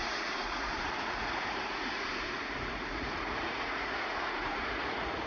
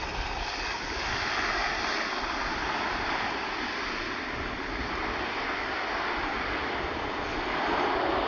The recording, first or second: second